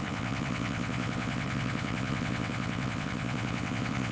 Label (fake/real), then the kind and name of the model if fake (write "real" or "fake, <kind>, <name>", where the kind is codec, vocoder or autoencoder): fake, vocoder, WaveNeXt